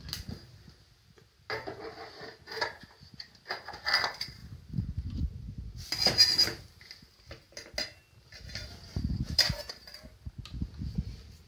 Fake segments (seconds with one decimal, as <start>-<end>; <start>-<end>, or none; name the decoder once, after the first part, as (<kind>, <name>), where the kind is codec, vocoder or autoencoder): none